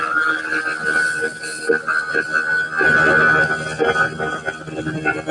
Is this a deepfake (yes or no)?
no